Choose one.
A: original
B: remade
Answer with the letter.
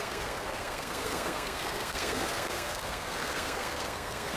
B